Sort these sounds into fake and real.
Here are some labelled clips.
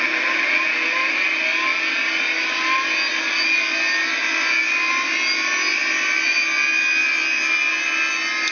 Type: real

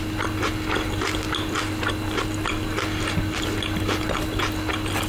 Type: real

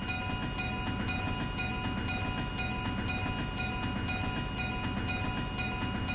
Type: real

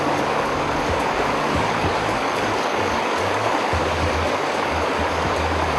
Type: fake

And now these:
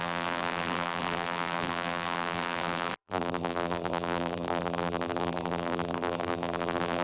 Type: fake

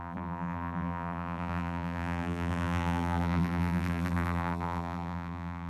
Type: fake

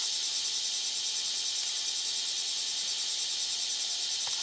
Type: real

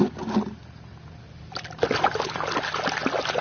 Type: real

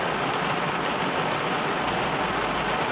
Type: real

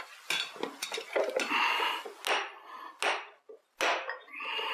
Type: real